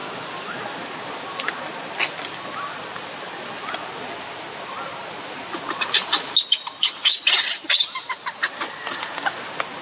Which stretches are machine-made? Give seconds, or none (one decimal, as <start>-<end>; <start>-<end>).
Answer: none